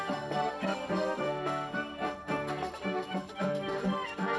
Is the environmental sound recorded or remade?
remade